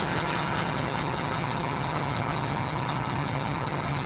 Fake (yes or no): yes